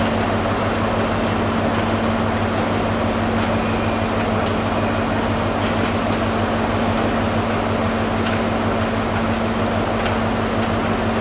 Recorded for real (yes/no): yes